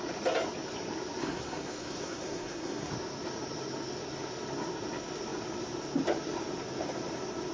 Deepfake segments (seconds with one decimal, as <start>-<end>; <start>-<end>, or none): 1.2-2.9